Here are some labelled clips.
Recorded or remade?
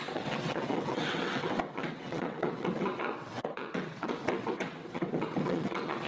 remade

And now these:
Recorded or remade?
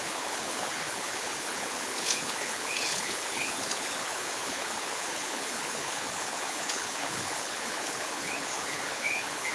remade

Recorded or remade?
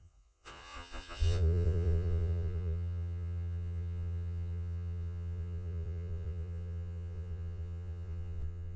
remade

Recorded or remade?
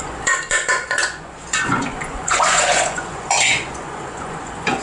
remade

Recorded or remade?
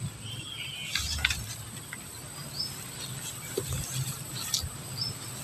recorded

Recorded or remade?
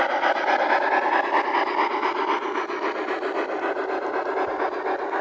recorded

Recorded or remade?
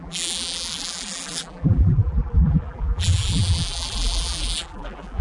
remade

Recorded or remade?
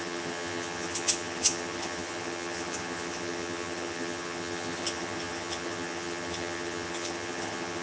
remade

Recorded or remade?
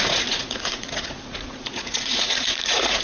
remade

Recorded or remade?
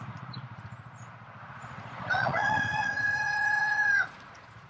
remade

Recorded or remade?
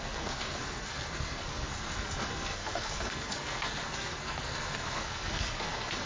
remade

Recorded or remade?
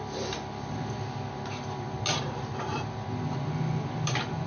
recorded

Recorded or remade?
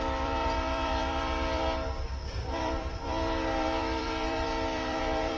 remade